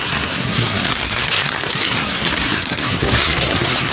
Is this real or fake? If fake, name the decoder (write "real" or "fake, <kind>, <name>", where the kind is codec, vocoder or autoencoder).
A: fake, codec, SNAC